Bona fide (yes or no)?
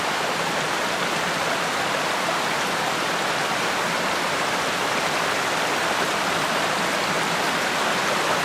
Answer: no